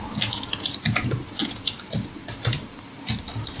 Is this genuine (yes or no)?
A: yes